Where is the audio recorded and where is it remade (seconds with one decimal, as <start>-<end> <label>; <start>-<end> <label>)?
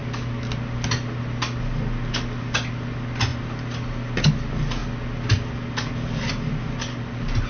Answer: 0.0-7.5 recorded